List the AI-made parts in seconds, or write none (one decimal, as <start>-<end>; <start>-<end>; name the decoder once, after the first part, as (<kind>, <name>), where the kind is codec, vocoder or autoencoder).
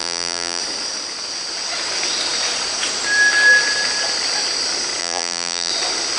0.0-0.6 (vocoder, BigVGAN v2); 5.0-5.7